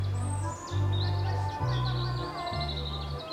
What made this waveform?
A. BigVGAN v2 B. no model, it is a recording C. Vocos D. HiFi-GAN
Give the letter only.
B